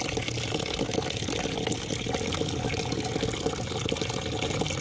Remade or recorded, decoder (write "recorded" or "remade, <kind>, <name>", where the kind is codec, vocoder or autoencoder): recorded